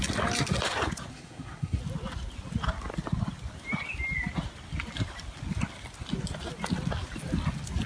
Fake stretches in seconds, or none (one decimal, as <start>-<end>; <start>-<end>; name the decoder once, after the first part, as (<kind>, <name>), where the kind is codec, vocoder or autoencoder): 1.1-1.8 (codec, SNAC)